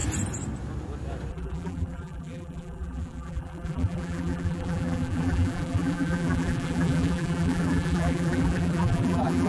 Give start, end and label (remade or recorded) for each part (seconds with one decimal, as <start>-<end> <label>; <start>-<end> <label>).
0.0-1.3 recorded; 1.3-9.5 remade